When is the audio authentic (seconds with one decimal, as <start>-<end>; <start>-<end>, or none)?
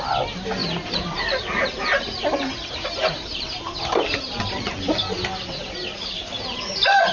0.0-0.6; 4.4-7.1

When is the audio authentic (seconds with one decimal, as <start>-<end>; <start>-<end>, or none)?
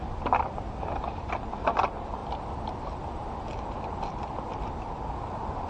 0.0-5.7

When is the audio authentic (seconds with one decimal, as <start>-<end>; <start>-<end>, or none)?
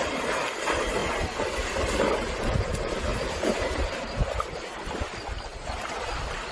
0.0-3.1; 4.9-5.5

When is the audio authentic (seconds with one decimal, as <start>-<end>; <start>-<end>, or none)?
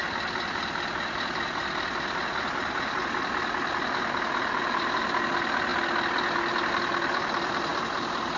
0.0-8.4